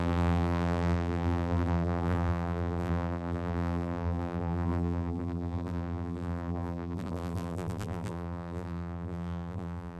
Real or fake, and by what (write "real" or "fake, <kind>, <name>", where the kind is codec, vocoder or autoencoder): fake, vocoder, BigVGAN v2